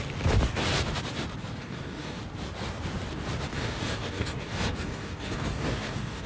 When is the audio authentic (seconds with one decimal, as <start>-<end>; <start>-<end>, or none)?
0.0-1.6; 2.2-3.5